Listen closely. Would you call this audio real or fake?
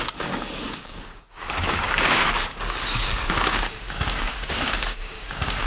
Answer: fake